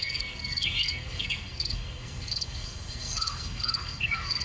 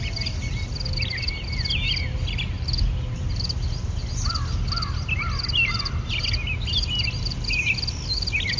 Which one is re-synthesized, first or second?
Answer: first